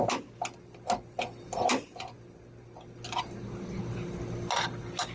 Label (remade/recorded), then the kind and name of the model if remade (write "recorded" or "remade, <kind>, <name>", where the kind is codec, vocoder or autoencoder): recorded